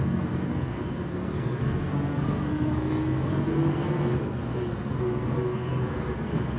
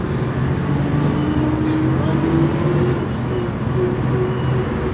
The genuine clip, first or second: second